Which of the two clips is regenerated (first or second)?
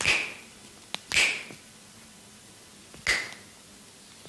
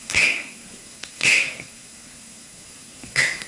second